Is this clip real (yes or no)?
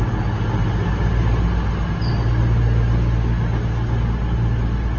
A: yes